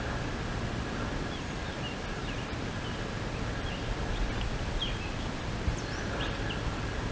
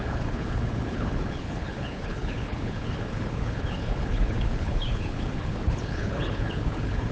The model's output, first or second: second